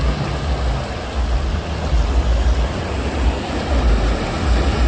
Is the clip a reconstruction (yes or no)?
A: no